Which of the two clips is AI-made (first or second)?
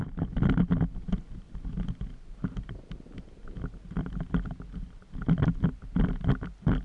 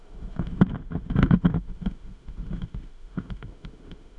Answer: second